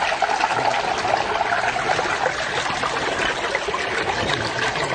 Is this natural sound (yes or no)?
yes